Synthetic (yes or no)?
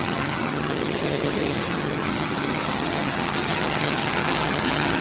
yes